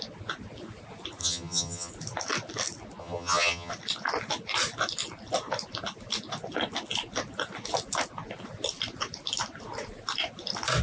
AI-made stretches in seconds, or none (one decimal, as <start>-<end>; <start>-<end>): 1.2-1.9; 3.0-3.7